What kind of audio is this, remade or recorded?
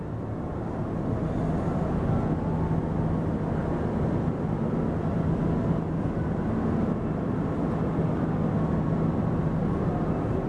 recorded